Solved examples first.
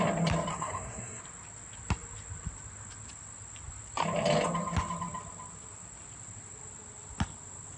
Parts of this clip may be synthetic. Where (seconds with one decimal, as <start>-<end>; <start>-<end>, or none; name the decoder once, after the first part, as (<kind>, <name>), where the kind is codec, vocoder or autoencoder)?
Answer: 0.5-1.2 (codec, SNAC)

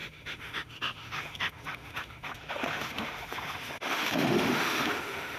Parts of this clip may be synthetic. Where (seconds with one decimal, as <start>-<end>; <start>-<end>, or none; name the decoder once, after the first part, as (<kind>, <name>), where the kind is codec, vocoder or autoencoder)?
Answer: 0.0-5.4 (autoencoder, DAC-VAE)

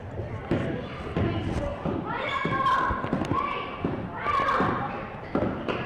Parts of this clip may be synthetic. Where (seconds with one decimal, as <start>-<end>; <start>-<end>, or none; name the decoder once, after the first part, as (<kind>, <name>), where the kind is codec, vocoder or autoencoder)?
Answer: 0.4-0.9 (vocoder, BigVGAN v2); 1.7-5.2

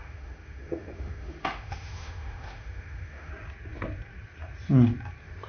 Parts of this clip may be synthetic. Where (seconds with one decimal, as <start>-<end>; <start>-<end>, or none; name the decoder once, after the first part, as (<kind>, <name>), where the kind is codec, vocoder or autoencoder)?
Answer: 0.0-3.3 (autoencoder, DAC-VAE)

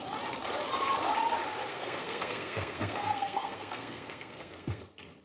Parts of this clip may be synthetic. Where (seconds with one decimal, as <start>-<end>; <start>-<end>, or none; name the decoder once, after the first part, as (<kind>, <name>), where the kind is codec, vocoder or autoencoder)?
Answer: 1.7-4.8 (codec, SNAC)